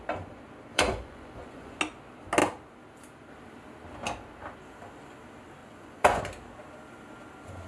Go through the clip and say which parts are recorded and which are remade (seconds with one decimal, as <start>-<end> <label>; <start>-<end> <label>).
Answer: 0.0-0.7 recorded; 0.7-1.8 remade; 1.8-5.6 recorded; 5.6-6.2 remade; 6.2-7.7 recorded